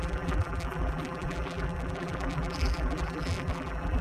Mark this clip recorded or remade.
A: remade